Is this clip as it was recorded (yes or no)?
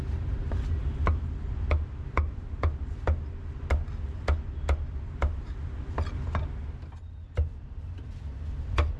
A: yes